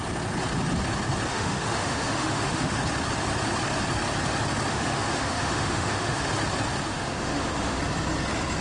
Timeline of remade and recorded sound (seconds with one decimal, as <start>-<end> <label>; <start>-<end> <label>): 0.0-1.3 recorded; 1.3-2.8 remade; 2.8-4.7 recorded; 4.7-6.3 remade; 6.3-6.9 recorded; 6.9-7.8 remade; 7.8-8.6 recorded